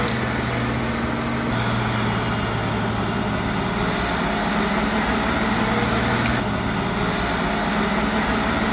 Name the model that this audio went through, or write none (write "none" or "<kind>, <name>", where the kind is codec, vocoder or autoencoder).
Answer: none